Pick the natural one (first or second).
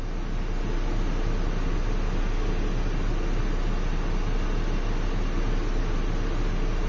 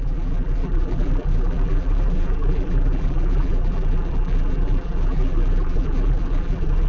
first